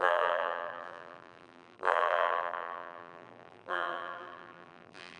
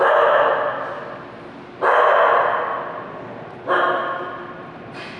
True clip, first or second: second